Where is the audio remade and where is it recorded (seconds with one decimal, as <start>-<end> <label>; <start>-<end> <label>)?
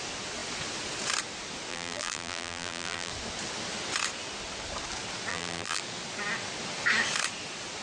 0.0-1.7 recorded; 1.7-3.1 remade; 3.1-5.3 recorded; 5.3-5.8 remade; 5.8-7.8 recorded